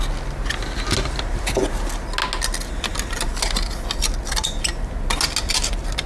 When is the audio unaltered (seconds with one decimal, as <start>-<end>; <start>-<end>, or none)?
0.0-6.1